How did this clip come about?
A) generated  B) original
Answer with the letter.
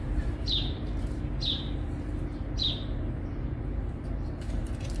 A